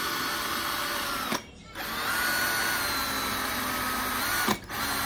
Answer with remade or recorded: recorded